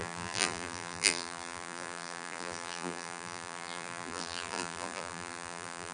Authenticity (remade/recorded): remade